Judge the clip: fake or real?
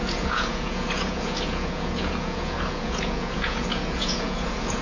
fake